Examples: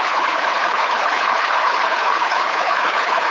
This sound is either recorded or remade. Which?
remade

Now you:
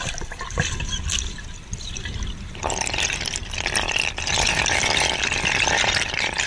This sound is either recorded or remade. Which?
remade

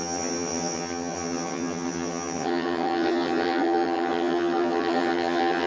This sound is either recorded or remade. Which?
remade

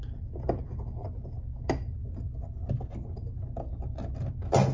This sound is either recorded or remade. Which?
recorded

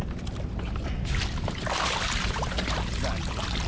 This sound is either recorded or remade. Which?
recorded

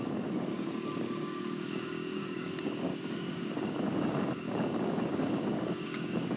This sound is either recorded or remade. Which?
remade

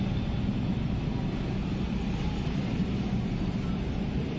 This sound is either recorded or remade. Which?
recorded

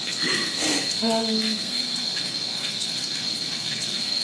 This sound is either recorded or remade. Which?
remade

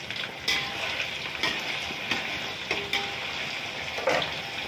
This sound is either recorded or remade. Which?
recorded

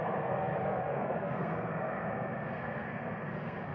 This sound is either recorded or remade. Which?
remade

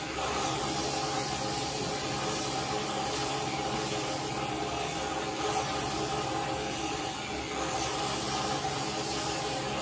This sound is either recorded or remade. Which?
recorded